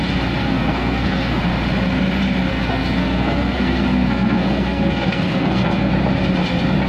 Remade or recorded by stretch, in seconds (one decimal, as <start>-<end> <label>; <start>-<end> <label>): 0.0-0.4 recorded; 0.4-1.4 remade; 1.4-2.5 recorded; 2.5-5.9 remade; 5.9-6.9 recorded